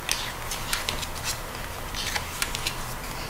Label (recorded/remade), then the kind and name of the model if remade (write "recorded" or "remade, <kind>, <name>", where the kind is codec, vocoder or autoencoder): recorded